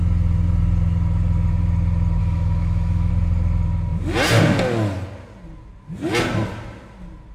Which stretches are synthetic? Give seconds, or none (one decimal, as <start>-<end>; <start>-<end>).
2.2-3.1